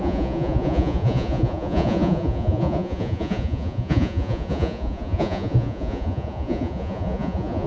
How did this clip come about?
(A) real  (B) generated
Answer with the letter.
B